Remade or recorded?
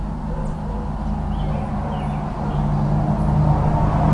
recorded